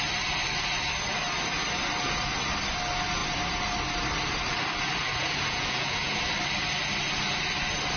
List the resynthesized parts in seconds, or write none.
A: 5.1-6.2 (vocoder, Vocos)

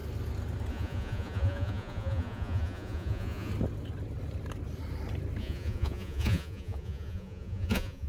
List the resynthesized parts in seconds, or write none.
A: 0.7-3.5 (vocoder, Vocos); 5.4-8.1

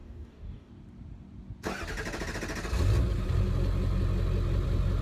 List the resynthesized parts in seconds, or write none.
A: 0.0-0.7 (codec, DAC)

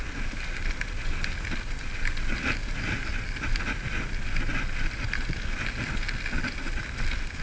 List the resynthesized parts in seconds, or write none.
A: 4.5-5.3 (vocoder, BigVGAN v2)